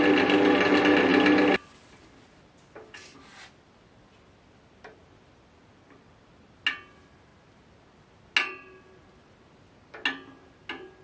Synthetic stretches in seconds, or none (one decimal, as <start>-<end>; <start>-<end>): none